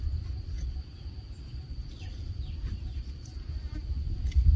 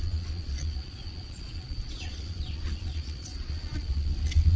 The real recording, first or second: first